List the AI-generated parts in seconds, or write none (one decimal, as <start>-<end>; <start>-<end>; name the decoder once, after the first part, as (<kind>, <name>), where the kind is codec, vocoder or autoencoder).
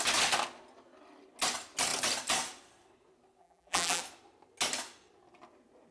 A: 3.4-4.0 (vocoder, BigVGAN v2)